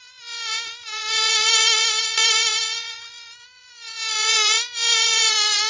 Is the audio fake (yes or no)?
yes